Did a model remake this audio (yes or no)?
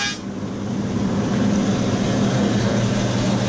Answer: no